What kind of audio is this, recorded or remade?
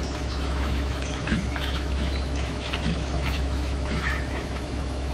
remade